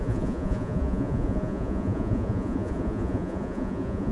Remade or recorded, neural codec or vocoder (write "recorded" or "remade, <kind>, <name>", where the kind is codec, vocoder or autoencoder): remade, vocoder, Vocos